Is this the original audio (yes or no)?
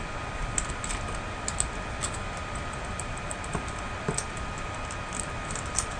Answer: yes